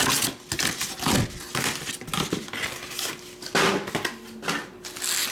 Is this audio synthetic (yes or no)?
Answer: no